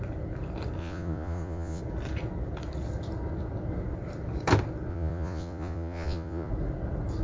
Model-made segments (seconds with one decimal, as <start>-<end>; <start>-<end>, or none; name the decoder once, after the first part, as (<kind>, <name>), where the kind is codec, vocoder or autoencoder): 0.8-1.8 (vocoder, Vocos); 4.9-6.5